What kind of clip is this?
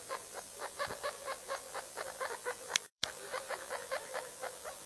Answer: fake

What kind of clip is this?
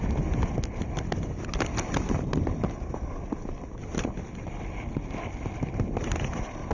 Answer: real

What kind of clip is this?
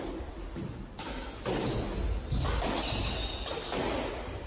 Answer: real